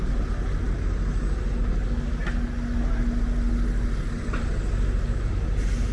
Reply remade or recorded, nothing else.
recorded